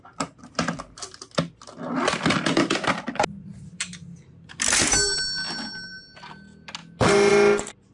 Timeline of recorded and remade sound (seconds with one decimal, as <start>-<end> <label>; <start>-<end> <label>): 0.0-7.9 recorded